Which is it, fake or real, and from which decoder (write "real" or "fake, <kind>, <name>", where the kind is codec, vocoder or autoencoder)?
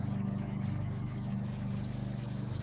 fake, codec, DAC